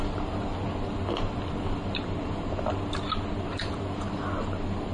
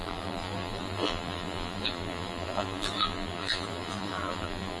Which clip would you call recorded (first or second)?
first